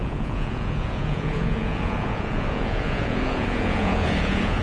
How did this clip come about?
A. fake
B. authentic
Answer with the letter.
A